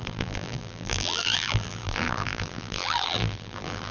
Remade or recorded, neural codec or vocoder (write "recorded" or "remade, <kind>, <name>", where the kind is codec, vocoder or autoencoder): remade, vocoder, BigVGAN v2